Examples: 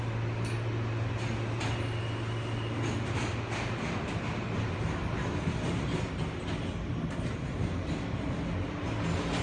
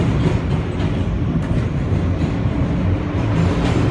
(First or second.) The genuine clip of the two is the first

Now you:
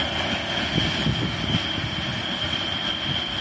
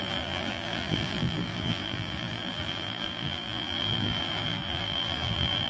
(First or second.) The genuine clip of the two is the first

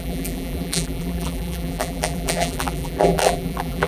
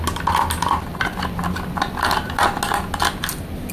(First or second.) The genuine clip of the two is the second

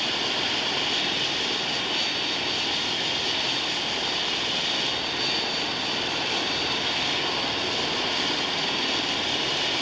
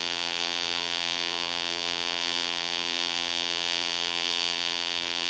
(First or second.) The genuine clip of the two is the first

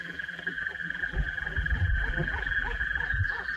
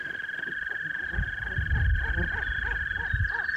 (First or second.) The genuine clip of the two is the second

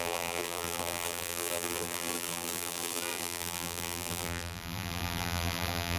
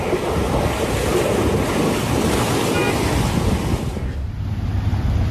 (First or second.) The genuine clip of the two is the second